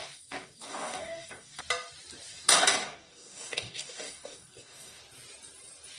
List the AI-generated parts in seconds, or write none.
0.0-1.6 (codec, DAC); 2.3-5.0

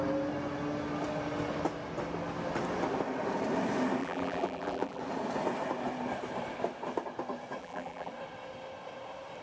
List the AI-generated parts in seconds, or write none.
4.0-5.0 (vocoder, BigVGAN v2); 7.6-8.1